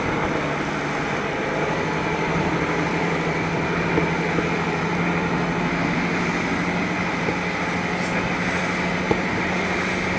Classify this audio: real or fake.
real